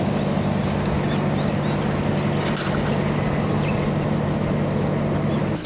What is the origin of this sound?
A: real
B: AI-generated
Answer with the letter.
A